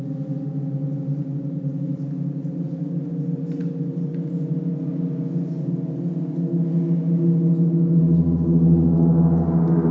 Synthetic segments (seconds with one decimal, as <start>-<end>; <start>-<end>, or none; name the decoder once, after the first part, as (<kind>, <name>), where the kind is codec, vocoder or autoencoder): none